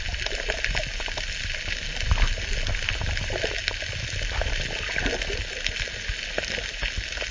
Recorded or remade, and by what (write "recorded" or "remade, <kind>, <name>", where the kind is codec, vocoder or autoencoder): recorded